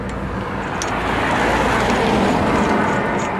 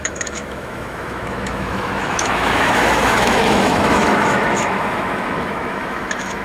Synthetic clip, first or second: second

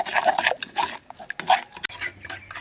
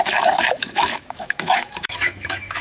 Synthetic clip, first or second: second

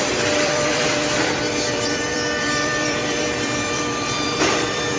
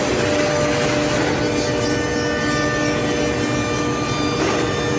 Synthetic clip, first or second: first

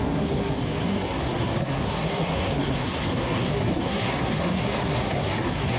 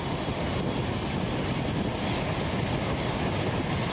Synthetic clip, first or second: first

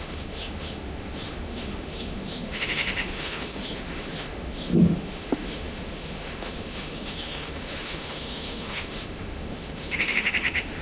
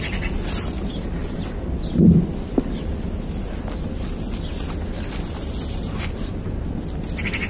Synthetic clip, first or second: first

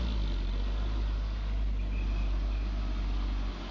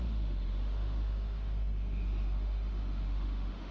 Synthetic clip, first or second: second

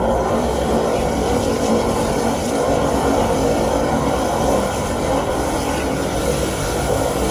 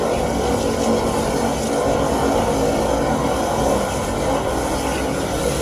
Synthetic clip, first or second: first